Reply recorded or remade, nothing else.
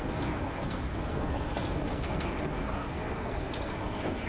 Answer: remade